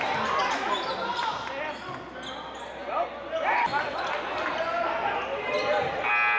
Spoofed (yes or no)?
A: no